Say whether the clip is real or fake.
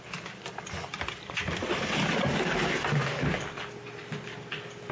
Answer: real